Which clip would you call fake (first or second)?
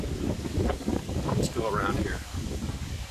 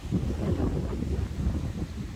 first